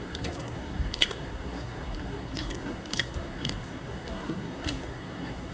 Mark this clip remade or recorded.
remade